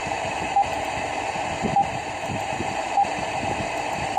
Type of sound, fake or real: fake